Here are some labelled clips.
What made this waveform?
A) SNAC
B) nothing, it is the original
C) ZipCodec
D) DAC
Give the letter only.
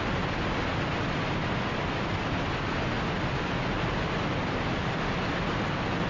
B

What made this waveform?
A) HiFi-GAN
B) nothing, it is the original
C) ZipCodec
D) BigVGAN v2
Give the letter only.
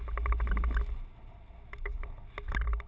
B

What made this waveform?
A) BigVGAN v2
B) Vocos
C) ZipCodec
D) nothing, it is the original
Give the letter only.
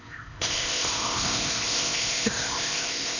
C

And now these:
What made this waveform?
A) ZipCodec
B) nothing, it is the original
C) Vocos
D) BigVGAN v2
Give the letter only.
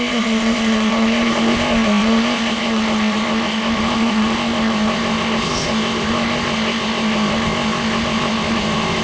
A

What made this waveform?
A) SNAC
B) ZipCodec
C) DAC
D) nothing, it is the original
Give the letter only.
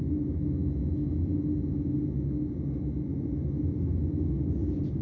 D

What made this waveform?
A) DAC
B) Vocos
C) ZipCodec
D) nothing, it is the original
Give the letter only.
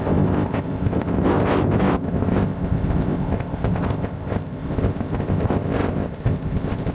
C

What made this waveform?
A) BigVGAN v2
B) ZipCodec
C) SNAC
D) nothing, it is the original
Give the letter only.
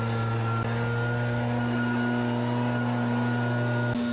D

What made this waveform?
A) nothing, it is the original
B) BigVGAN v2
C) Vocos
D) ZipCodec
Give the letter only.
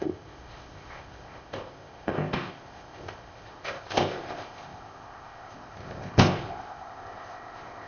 D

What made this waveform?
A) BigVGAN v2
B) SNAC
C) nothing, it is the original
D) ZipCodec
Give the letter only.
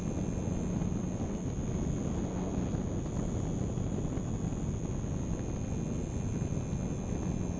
C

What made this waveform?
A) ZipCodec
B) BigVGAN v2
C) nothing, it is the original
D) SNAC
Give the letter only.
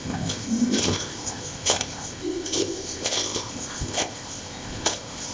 A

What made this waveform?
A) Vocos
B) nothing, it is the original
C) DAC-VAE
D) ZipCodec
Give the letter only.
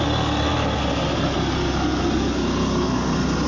B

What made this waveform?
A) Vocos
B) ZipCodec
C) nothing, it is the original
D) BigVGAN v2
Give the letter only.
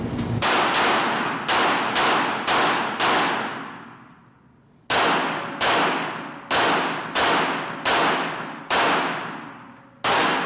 C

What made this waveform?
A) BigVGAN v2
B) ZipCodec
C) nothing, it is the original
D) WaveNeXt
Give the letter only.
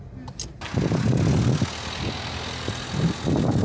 C